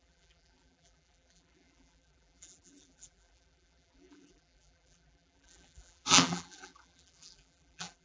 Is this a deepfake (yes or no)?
yes